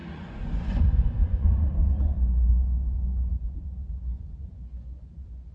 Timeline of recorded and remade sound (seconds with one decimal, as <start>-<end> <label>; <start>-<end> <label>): 0.0-5.5 remade